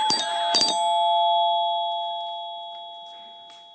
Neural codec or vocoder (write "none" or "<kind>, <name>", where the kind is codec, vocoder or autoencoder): none